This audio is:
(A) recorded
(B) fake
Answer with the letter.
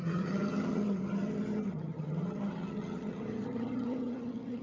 B